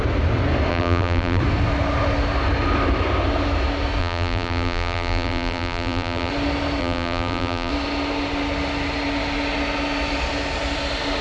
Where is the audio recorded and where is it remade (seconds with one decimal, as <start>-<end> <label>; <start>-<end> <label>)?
0.0-0.7 recorded; 0.7-1.4 remade; 1.4-4.0 recorded; 4.0-6.3 remade; 6.3-6.8 recorded; 6.8-7.7 remade; 7.7-11.2 recorded